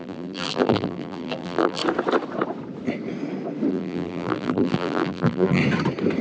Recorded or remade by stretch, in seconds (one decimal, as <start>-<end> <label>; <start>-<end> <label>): 0.0-1.8 remade; 1.8-3.7 recorded; 3.7-5.6 remade; 5.6-6.2 recorded